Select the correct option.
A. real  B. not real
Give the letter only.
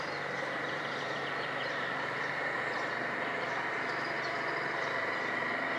B